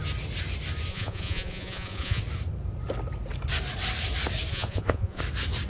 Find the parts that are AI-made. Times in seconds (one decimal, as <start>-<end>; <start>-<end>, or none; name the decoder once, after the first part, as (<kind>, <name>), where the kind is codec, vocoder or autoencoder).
0.9-2.2 (vocoder, Vocos); 4.5-5.2